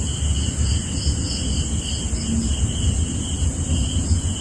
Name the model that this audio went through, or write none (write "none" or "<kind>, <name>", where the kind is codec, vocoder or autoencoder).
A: none